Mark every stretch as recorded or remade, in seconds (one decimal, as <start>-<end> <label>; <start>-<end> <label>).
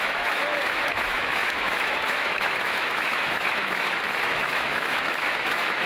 0.0-5.9 remade